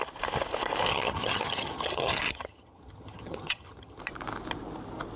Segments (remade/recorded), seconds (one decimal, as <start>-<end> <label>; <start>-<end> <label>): 0.0-0.9 recorded; 0.9-4.0 remade; 4.0-5.2 recorded